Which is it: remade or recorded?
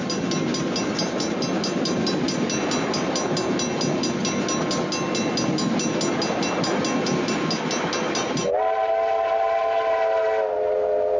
recorded